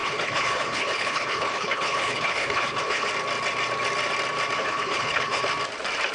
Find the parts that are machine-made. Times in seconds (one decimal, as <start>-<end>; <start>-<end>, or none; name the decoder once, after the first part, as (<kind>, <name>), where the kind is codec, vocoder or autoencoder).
0.0-3.1 (codec, HILCodec); 4.6-5.4